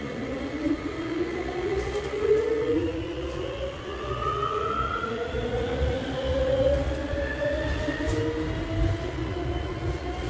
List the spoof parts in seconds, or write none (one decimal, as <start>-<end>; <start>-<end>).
0.0-8.1; 9.0-10.3